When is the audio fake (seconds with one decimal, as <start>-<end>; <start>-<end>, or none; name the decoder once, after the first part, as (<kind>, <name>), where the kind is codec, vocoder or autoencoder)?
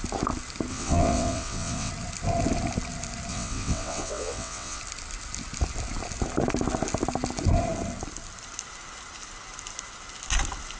0.7-1.9 (vocoder, WaveNeXt); 3.3-4.8